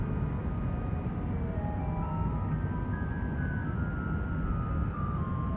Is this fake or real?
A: real